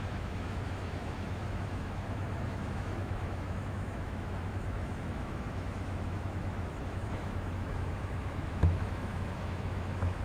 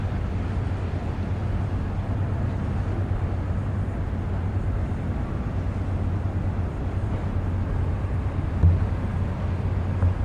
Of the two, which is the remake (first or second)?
first